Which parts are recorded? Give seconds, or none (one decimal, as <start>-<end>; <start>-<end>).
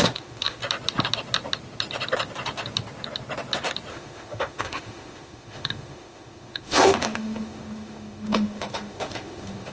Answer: 0.6-3.9